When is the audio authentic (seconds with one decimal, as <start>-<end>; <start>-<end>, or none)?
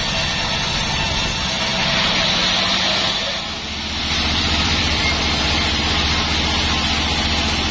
0.0-1.7; 3.3-4.0; 5.8-7.7